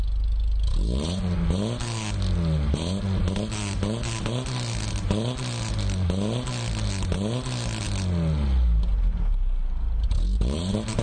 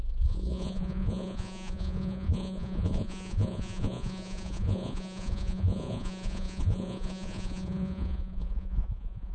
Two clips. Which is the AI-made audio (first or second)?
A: second